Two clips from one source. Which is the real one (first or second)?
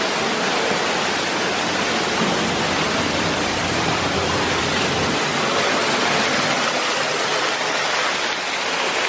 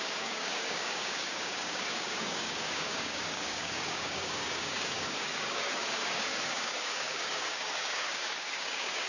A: first